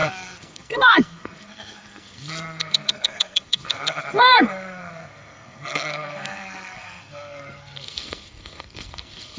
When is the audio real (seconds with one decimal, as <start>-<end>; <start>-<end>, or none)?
none